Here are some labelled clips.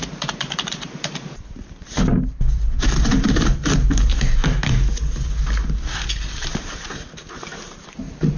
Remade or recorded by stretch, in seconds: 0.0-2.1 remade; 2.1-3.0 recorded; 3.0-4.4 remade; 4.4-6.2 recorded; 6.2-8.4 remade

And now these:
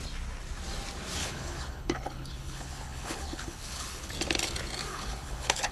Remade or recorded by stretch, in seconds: 0.0-1.2 recorded; 1.2-4.1 remade; 4.1-4.9 recorded; 4.9-5.7 remade

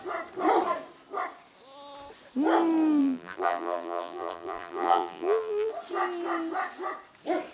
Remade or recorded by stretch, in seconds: 0.0-3.0 recorded; 3.0-5.7 remade; 5.7-7.5 recorded

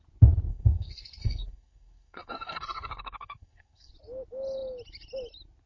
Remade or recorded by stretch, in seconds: 0.0-0.5 recorded; 0.5-3.9 remade; 3.9-5.7 recorded

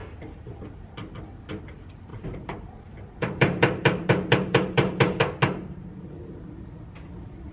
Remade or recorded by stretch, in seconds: 0.0-2.1 recorded; 2.1-5.2 remade; 5.2-7.5 recorded

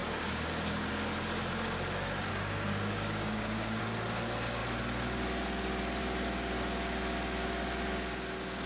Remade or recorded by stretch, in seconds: 0.0-0.9 remade; 0.9-2.3 recorded; 2.3-3.8 remade; 3.8-8.7 recorded